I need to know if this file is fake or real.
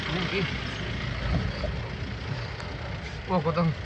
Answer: real